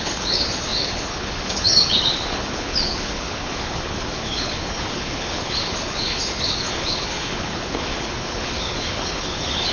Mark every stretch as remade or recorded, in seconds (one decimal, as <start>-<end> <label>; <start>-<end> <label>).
0.0-9.7 remade